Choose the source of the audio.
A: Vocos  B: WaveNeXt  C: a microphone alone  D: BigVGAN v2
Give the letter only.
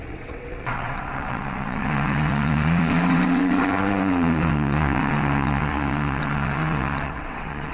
B